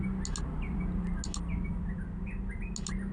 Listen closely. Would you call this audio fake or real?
real